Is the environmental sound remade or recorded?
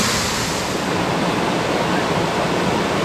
recorded